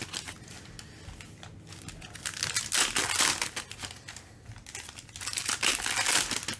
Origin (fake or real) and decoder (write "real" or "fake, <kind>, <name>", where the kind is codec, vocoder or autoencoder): real